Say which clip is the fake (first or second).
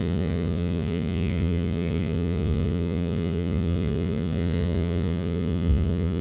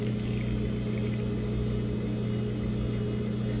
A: first